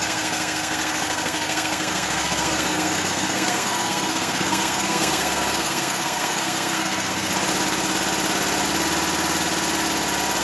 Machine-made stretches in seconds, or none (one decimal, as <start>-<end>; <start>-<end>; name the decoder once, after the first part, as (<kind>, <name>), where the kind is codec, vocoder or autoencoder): 0.0-7.3 (codec, SNAC)